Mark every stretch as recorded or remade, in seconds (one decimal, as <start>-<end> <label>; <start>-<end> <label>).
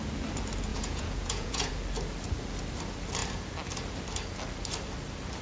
0.0-0.7 recorded; 0.7-1.7 remade; 1.7-5.4 recorded